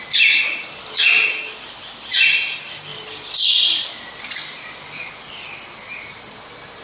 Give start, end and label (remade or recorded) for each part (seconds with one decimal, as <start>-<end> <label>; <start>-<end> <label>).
0.0-2.9 recorded; 2.9-5.1 remade; 5.1-6.8 recorded